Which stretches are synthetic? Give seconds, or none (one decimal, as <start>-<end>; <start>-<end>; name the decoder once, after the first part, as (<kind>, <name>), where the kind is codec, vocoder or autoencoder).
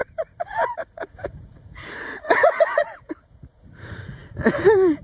0.0-5.0 (vocoder, Vocos)